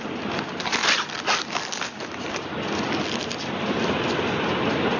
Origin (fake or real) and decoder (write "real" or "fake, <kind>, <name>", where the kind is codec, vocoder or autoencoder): real